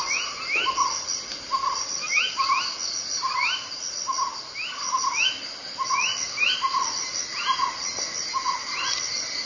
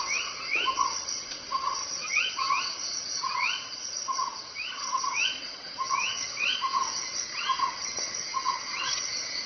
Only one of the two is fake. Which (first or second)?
second